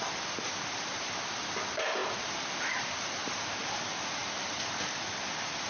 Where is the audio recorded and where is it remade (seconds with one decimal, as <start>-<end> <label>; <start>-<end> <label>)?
0.0-5.7 recorded